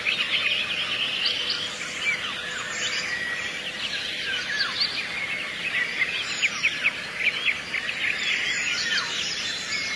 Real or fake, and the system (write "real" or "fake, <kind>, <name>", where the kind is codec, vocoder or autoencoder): real